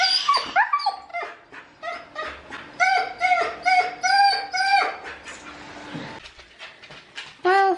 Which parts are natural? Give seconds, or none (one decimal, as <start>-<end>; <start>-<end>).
0.0-7.8